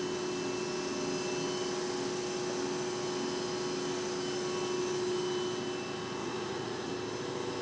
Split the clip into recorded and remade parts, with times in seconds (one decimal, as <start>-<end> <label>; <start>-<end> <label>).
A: 0.0-6.2 recorded; 6.2-6.9 remade; 6.9-7.6 recorded